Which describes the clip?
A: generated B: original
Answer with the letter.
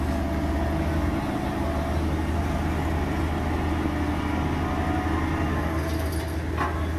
B